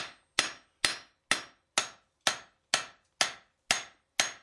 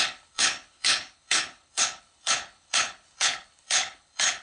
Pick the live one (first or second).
first